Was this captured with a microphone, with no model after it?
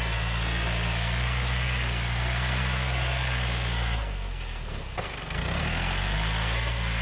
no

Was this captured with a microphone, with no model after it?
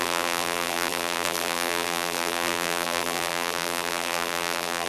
no